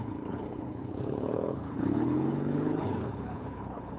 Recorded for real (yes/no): no